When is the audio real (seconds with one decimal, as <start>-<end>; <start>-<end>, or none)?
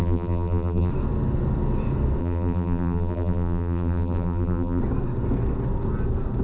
0.9-2.2; 4.8-6.4